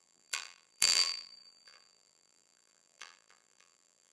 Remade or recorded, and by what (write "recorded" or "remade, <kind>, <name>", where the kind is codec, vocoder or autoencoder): remade, vocoder, BigVGAN v2